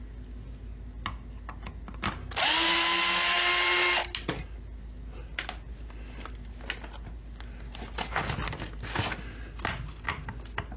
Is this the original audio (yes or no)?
yes